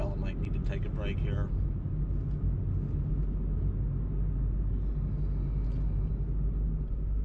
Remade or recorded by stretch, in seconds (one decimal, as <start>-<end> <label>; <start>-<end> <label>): 0.0-7.2 recorded